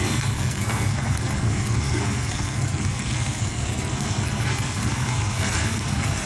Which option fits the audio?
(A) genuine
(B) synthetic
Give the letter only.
B